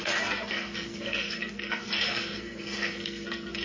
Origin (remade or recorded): remade